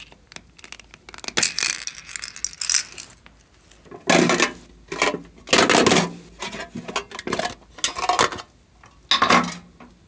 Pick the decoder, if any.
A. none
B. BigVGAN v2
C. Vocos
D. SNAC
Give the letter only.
A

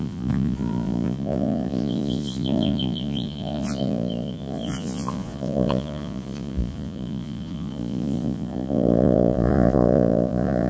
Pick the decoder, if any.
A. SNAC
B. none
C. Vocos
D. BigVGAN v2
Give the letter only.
C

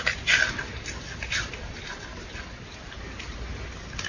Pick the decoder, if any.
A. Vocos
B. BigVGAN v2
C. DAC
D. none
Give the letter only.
D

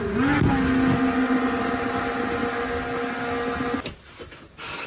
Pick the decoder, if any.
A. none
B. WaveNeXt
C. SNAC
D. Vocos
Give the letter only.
A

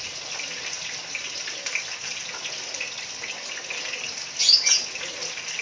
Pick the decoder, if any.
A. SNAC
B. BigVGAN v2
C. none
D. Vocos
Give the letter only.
C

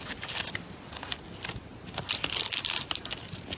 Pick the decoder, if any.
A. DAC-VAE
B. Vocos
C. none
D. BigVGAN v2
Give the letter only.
C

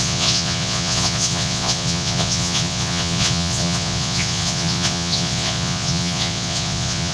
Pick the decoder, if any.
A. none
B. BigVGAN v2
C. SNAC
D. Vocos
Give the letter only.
D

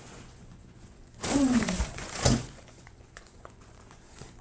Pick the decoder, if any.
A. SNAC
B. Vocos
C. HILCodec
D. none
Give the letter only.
B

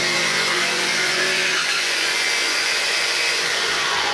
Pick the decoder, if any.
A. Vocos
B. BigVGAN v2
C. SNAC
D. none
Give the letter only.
A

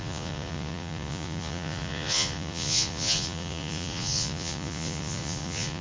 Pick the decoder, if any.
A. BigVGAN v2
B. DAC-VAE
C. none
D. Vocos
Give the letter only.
D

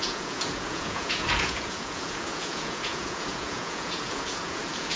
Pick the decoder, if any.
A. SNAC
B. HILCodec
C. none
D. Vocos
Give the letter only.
D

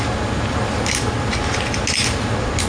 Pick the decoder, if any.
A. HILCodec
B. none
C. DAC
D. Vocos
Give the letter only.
B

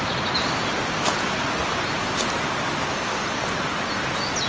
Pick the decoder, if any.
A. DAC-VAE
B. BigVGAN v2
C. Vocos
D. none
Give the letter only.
D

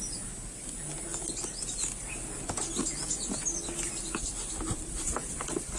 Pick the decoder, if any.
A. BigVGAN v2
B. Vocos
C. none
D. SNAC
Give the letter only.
C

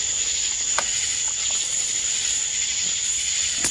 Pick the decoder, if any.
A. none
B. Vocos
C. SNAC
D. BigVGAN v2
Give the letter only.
A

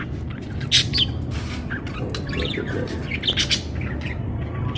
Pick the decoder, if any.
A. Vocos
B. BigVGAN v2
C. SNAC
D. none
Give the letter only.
D